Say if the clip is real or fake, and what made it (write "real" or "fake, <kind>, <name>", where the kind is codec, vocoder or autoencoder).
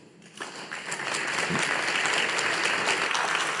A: real